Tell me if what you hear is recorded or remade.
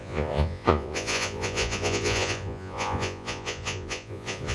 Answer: remade